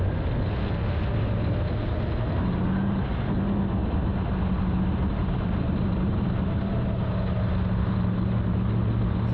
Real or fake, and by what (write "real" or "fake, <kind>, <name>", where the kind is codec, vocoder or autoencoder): real